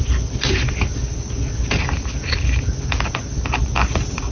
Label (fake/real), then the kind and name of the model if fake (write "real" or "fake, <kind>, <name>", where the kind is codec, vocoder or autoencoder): real